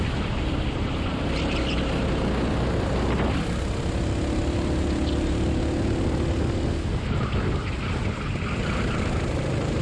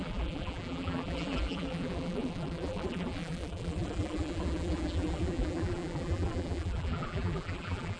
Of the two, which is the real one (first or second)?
first